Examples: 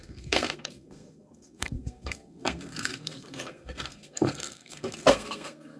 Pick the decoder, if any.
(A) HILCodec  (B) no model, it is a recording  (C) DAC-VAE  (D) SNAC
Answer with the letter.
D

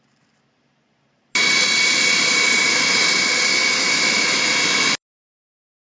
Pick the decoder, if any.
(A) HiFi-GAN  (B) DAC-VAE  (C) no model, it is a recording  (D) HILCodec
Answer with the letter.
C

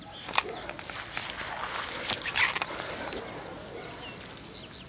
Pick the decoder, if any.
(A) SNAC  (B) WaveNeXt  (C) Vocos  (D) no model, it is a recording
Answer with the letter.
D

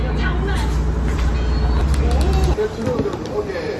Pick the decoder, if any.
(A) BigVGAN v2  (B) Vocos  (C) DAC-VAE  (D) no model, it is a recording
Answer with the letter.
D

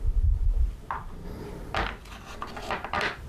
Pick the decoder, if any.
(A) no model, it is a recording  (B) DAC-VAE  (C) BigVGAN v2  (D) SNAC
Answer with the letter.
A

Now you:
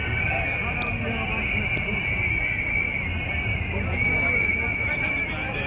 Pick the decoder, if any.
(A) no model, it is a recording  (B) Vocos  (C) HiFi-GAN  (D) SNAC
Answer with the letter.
A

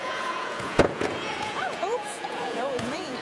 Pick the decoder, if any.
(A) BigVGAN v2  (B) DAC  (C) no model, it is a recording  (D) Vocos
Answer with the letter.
D